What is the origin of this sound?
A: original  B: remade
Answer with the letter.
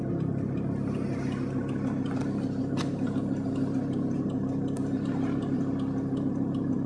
A